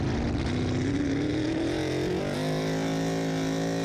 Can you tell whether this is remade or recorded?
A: recorded